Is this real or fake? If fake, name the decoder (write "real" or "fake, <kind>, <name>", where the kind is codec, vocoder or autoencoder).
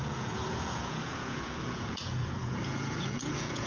fake, vocoder, Vocos